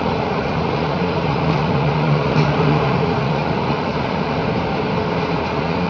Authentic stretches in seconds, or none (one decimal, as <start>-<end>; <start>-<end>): 4.4-5.4